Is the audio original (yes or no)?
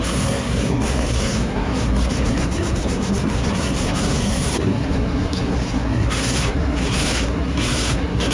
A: no